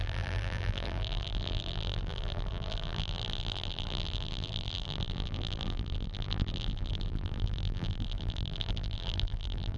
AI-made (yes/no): yes